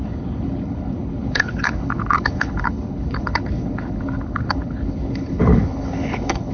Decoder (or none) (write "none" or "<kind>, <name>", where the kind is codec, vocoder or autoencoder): codec, HILCodec